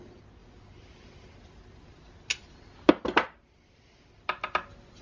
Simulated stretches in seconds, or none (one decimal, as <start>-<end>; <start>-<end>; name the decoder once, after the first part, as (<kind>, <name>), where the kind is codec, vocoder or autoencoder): none